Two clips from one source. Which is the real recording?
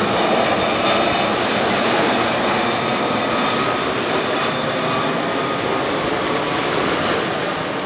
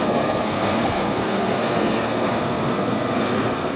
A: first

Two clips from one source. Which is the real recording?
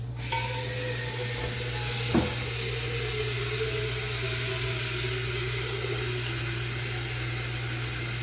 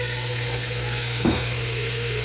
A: first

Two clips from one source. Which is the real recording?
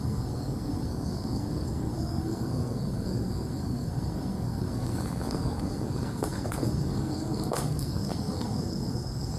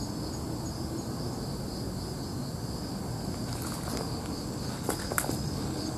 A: second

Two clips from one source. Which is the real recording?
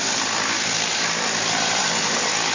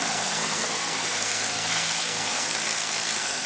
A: first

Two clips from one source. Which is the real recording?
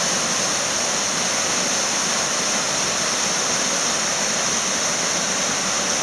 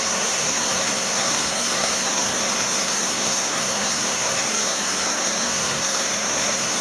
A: first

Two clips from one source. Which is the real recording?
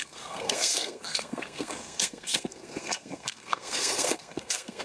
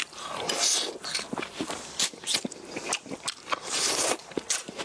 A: second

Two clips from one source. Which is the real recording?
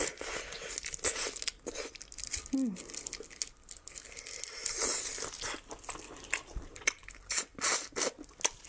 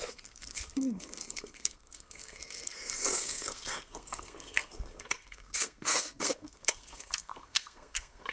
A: first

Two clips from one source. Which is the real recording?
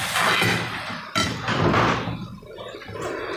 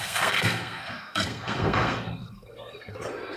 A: first